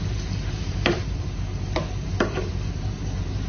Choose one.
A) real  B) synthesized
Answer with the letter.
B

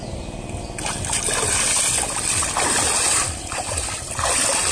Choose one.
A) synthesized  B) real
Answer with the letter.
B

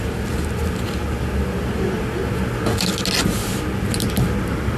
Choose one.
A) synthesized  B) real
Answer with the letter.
B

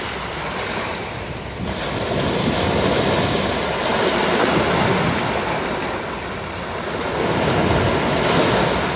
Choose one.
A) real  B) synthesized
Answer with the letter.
A